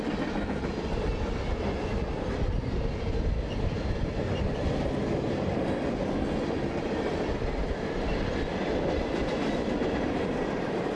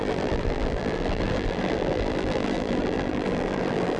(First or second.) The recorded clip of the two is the first